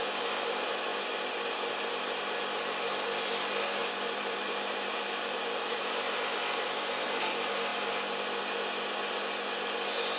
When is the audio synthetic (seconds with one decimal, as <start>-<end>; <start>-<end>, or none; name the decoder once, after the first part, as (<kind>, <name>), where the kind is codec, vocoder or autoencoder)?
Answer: 3.8-6.0 (vocoder, BigVGAN v2)